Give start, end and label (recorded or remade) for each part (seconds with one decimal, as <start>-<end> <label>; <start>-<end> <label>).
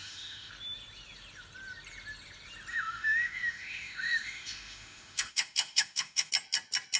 0.0-0.5 remade; 0.5-2.7 recorded; 2.7-6.3 remade; 6.3-7.0 recorded